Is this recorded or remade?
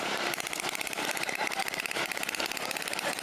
remade